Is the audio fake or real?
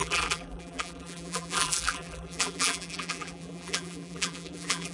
fake